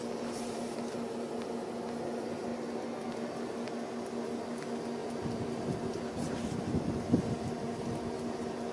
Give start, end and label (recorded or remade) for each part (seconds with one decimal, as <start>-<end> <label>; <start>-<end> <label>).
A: 0.0-8.7 recorded